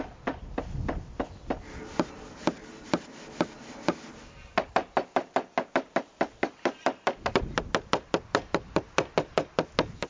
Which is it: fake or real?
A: real